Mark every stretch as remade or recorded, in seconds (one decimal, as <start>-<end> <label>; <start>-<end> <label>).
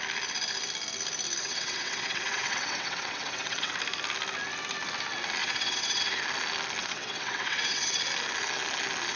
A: 0.0-1.4 recorded; 1.4-3.7 remade; 3.7-5.4 recorded; 5.4-6.0 remade; 6.0-6.8 recorded; 6.8-8.0 remade; 8.0-9.2 recorded